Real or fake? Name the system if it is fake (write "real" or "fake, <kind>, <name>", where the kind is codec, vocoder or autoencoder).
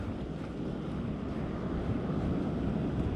real